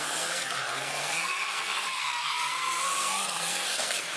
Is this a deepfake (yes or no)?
yes